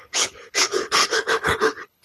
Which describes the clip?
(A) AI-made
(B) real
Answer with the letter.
A